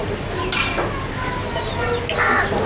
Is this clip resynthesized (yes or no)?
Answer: no